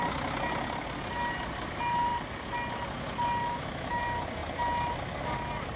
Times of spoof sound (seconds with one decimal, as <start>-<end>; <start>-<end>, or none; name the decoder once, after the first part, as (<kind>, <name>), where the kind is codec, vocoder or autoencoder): 3.4-4.0 (autoencoder, DAC-VAE)